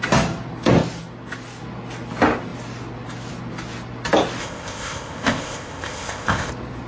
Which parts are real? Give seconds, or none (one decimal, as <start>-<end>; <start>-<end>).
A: 0.0-4.4; 6.5-6.9